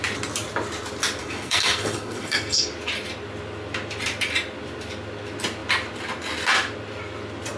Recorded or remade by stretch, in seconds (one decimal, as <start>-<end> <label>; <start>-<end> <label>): 0.0-1.2 recorded; 1.2-2.7 remade; 2.7-7.6 recorded